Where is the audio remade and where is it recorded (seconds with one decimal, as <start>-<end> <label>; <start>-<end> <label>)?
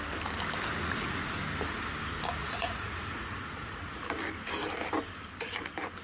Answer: 0.0-0.7 recorded; 0.7-1.4 remade; 1.4-2.4 recorded; 2.4-4.0 remade; 4.0-6.0 recorded